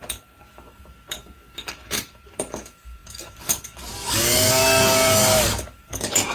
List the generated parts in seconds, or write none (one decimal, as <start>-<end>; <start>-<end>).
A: 0.0-6.3